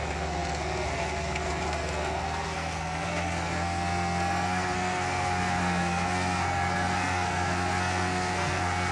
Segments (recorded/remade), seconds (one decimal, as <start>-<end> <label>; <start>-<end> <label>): 0.0-8.9 remade